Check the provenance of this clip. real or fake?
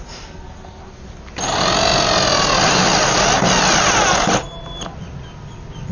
real